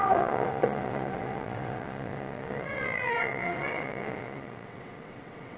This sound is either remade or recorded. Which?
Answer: remade